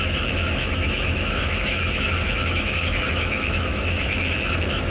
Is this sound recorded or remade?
remade